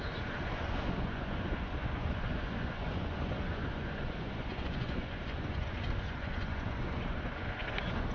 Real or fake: fake